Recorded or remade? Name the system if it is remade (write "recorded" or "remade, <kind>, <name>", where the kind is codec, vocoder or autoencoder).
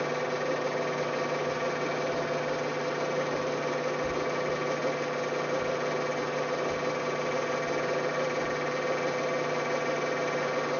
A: recorded